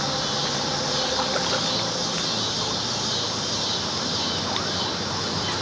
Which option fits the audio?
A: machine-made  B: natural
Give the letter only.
B